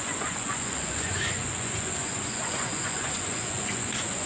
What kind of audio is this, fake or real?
fake